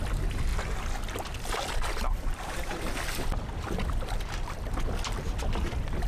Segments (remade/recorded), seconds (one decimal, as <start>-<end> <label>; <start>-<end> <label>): 0.0-6.1 recorded